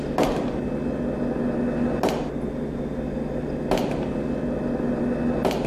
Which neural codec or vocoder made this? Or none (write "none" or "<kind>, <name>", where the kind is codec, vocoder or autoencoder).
none